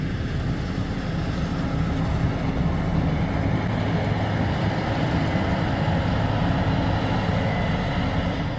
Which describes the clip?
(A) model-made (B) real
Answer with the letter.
B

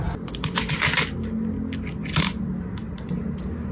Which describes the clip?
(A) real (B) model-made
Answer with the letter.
A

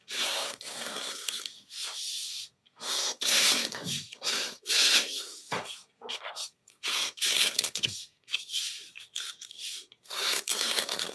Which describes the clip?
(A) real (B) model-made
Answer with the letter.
B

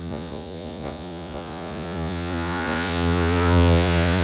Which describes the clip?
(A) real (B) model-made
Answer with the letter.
B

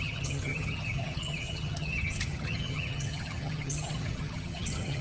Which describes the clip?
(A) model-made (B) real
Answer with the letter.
A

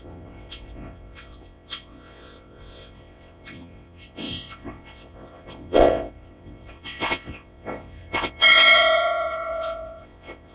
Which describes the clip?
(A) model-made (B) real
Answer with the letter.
A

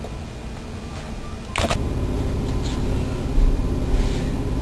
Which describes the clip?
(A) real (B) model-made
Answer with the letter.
A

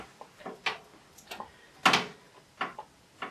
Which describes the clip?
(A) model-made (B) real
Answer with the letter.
B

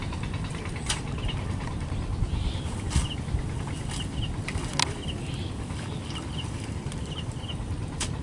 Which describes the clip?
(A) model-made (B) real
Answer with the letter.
B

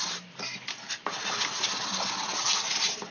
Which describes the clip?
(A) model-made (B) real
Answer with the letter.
B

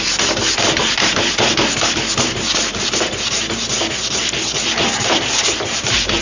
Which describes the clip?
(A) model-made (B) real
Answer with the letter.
A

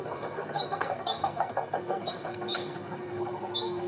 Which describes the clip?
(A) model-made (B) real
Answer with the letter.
A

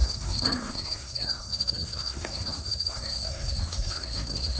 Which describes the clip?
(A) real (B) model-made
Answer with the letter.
B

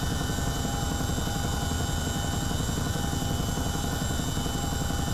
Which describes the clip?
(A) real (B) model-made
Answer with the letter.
A